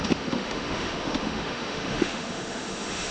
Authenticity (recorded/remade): remade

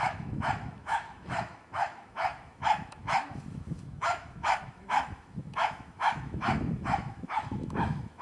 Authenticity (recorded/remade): remade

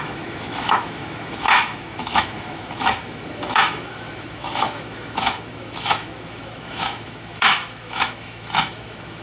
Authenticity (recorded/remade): remade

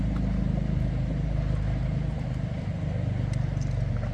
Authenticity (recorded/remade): recorded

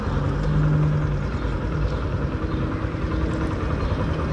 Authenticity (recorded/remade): recorded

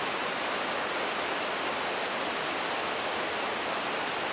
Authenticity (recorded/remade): recorded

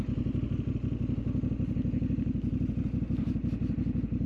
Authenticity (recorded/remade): recorded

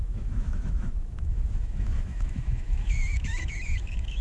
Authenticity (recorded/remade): remade